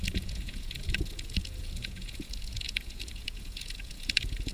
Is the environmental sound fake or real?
fake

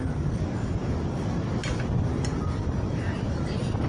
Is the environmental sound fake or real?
real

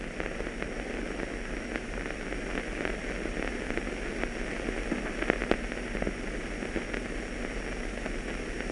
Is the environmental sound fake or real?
real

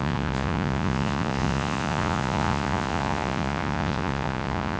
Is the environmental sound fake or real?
fake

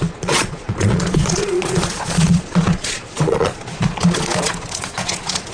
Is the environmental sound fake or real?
fake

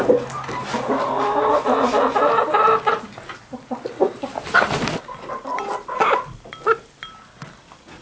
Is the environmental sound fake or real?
real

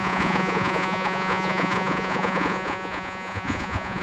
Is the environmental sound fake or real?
fake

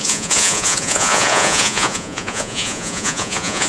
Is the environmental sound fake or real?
fake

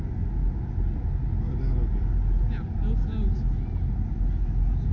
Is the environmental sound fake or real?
real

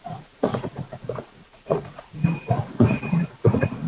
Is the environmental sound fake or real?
fake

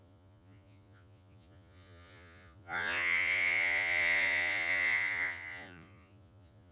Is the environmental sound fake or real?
fake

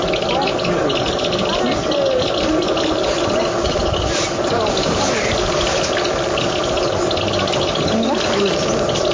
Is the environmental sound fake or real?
real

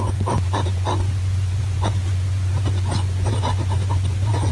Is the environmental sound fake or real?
fake